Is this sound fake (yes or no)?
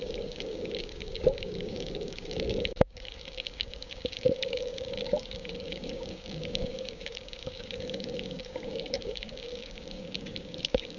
yes